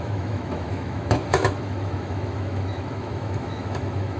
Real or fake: fake